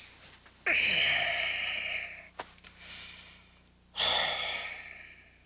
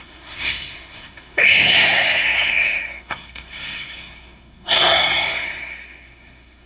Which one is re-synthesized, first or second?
second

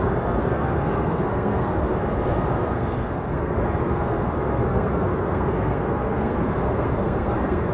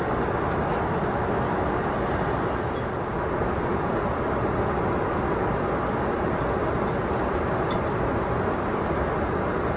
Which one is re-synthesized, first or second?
first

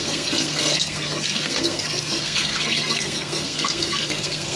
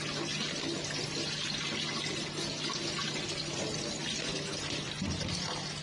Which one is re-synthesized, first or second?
first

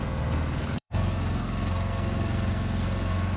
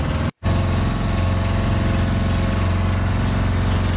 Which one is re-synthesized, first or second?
first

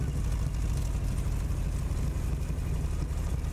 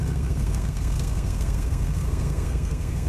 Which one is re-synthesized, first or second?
second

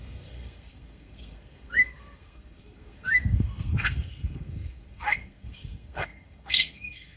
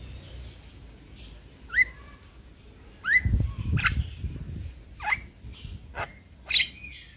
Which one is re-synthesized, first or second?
first